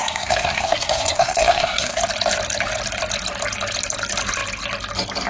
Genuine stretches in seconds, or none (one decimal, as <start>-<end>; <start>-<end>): 2.0-5.3